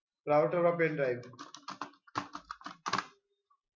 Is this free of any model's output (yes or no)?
yes